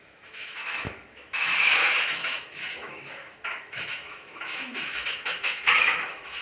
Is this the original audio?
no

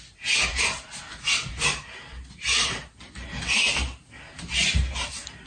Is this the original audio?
yes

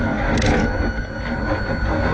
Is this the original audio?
yes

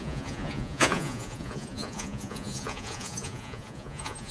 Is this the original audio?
no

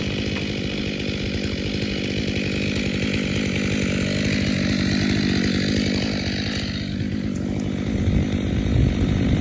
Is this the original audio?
yes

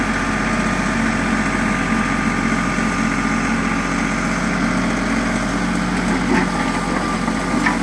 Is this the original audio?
yes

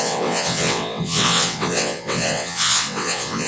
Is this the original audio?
no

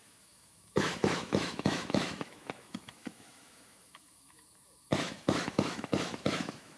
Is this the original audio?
no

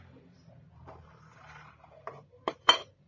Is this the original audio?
no